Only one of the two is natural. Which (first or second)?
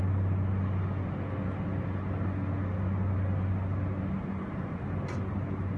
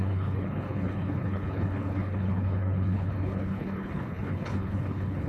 first